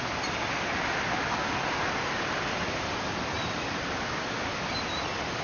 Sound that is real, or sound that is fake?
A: real